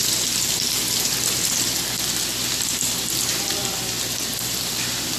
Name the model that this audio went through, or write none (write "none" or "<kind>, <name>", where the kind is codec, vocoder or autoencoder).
none